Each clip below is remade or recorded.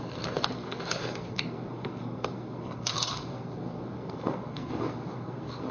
remade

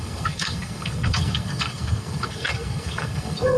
remade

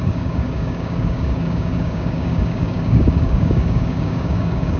remade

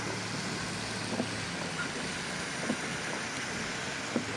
recorded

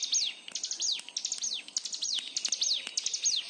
recorded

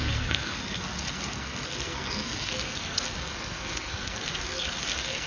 remade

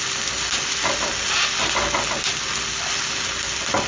recorded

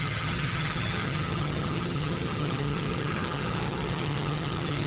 remade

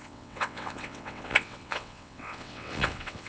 remade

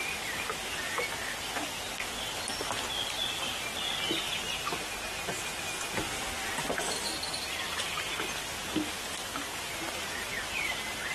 recorded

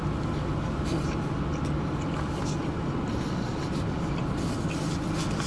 recorded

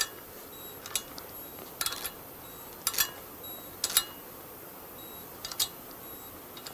recorded